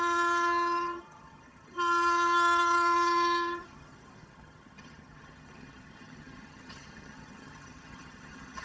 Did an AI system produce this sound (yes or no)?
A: yes